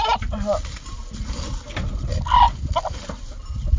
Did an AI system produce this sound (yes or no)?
no